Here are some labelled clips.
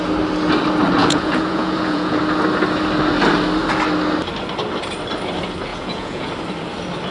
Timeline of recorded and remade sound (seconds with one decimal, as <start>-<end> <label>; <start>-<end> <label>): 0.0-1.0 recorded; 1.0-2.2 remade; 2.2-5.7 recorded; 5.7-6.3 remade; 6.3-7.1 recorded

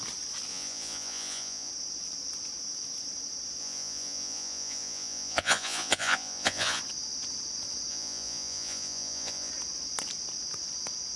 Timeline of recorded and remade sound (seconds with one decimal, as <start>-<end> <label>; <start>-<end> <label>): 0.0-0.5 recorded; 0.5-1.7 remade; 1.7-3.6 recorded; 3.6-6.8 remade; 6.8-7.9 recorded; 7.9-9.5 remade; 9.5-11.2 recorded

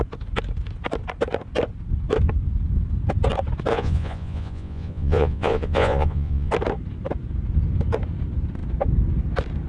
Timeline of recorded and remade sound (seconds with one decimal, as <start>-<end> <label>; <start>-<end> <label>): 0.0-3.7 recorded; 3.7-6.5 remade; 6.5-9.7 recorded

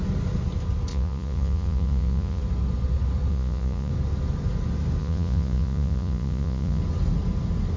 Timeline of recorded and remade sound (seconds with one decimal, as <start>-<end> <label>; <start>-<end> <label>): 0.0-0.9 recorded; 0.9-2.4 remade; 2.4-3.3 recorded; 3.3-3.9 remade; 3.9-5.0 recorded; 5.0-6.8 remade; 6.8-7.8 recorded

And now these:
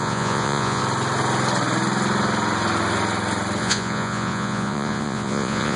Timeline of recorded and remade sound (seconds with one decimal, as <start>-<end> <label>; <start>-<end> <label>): 0.0-0.8 remade; 0.8-3.6 recorded; 3.6-5.8 remade

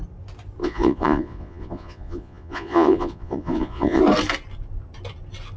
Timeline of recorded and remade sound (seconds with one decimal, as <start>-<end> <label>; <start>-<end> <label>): 0.0-0.6 recorded; 0.6-4.0 remade; 4.0-5.6 recorded